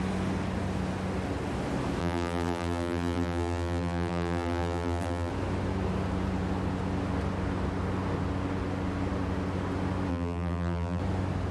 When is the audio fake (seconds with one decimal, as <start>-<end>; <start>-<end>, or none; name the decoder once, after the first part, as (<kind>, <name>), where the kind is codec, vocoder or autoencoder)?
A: 2.0-5.3 (vocoder, BigVGAN v2); 10.1-11.0